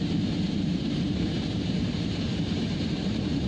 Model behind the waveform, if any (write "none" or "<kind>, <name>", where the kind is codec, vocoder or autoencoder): vocoder, BigVGAN v2